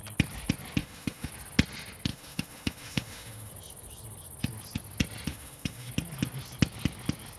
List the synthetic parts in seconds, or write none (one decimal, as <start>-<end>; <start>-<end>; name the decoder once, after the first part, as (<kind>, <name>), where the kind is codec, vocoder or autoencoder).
0.8-1.3 (autoencoder, DAC-VAE); 2.1-3.5; 5.3-5.9